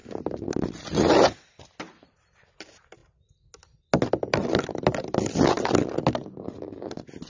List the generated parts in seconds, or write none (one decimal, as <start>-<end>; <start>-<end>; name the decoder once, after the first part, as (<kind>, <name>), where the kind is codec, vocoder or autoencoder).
none